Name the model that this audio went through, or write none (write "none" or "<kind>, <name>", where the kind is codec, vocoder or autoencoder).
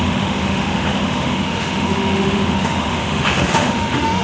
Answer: autoencoder, DAC-VAE